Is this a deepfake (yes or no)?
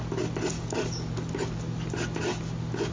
no